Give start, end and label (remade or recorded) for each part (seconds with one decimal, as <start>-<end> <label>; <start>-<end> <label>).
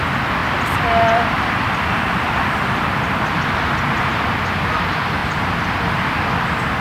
0.0-0.4 recorded; 0.4-4.1 remade; 4.1-6.8 recorded